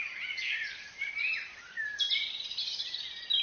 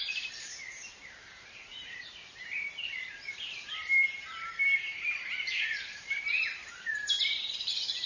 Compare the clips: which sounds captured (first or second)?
first